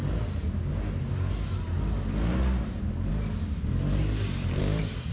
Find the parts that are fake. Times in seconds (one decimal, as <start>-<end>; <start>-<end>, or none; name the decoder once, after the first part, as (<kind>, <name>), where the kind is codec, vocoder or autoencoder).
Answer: 4.0-4.6 (vocoder, BigVGAN v2)